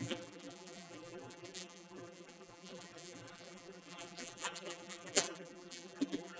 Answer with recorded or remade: remade